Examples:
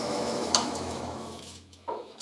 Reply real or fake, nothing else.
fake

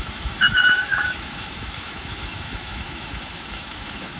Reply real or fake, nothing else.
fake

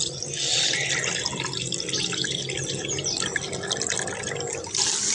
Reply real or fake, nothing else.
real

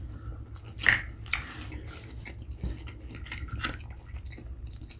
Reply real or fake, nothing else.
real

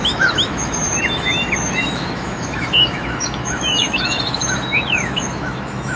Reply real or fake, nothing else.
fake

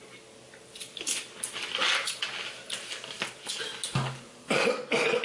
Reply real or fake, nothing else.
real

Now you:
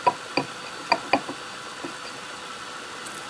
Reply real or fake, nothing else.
real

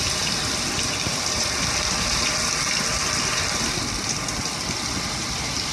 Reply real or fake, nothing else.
real